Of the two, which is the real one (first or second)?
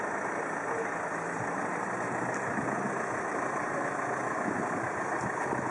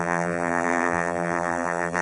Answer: first